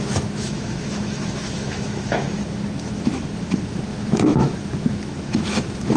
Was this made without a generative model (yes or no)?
no